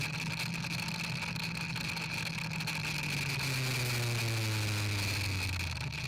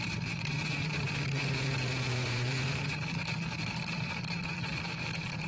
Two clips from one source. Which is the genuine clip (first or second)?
first